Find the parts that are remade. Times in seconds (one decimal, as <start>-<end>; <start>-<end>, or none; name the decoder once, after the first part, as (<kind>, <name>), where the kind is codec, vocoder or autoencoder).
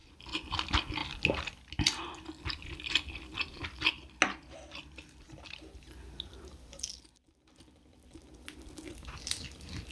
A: none